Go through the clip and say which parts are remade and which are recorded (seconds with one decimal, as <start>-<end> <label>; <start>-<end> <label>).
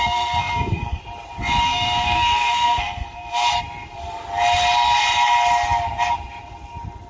0.0-1.0 remade; 1.0-1.6 recorded; 1.6-3.4 remade; 3.4-7.1 recorded